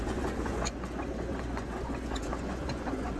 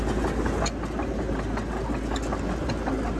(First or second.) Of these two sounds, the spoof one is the first